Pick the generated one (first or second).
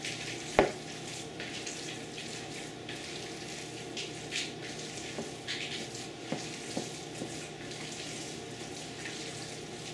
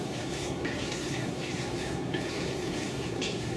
second